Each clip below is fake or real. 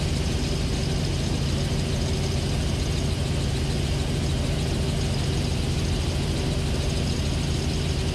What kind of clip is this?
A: real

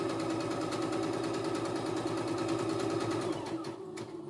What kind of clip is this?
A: real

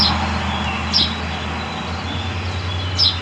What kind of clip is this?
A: real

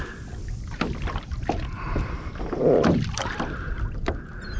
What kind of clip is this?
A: real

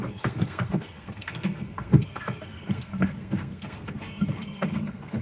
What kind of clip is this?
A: fake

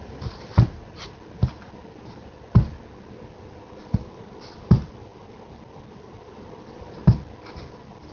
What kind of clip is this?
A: real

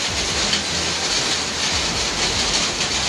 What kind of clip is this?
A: real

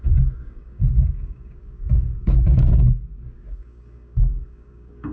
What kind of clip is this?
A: fake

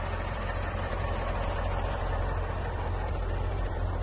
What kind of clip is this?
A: fake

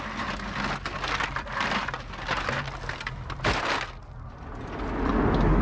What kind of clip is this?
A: real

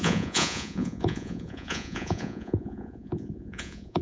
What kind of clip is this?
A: fake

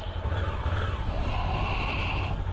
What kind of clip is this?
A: real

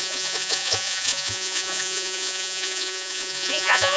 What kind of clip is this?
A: fake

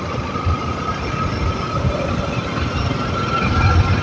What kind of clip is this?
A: real